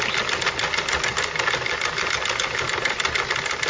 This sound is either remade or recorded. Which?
recorded